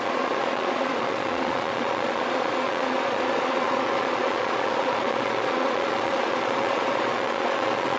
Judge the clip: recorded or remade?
remade